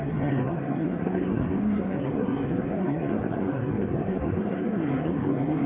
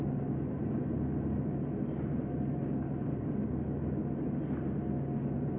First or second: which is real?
second